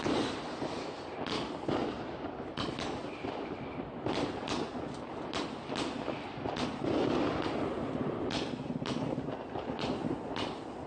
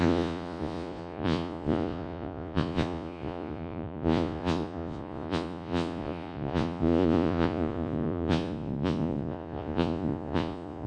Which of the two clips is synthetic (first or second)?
second